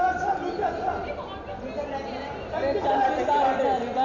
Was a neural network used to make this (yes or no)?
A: no